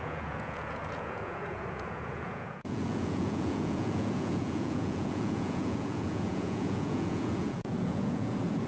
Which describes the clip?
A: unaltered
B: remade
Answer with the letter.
B